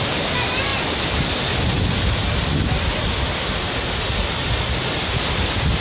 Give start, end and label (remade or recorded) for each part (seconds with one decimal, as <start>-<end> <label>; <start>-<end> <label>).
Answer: 0.0-5.8 recorded